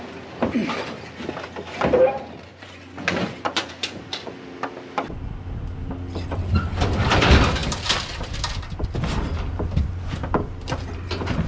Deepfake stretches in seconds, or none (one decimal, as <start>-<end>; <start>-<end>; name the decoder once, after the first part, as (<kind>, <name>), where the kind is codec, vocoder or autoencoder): 2.5-4.4 (vocoder, Vocos)